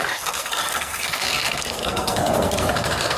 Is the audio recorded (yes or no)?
no